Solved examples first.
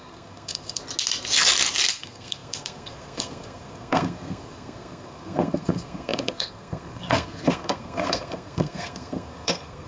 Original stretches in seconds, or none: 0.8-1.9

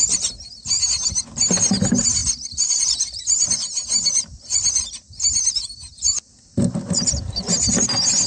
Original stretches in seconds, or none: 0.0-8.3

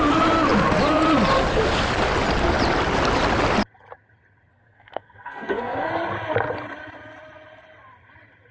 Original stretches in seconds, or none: 0.0-4.5; 5.9-8.5